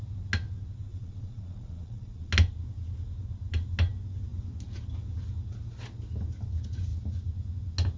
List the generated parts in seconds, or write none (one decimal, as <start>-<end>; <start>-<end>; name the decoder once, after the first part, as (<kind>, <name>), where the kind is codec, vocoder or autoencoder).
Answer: 0.9-2.3 (vocoder, Vocos)